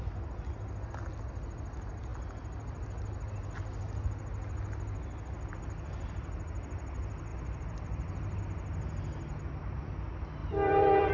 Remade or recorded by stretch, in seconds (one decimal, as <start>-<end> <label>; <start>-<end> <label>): 0.0-7.3 recorded; 7.3-8.4 remade; 8.4-10.4 recorded; 10.4-11.1 remade